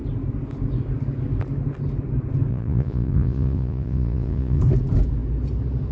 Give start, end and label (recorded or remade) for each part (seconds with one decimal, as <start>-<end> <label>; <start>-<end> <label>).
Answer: 0.0-2.5 recorded; 2.5-4.6 remade; 4.6-5.9 recorded